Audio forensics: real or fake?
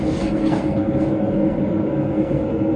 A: fake